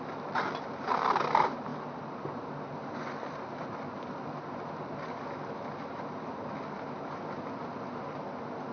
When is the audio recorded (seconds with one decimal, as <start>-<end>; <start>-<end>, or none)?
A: 0.0-8.7